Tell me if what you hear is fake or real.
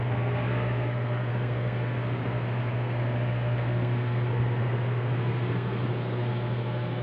fake